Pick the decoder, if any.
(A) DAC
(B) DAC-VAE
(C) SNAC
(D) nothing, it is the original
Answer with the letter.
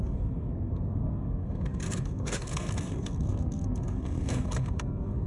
C